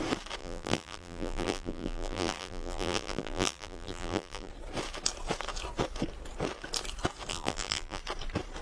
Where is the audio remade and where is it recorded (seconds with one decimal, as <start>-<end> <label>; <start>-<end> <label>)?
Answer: 0.0-0.4 recorded; 0.4-4.5 remade; 4.5-7.3 recorded; 7.3-8.0 remade; 8.0-8.6 recorded